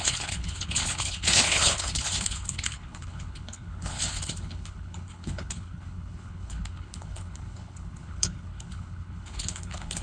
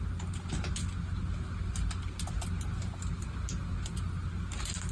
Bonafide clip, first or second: second